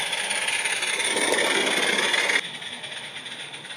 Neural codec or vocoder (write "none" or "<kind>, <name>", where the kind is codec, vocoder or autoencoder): none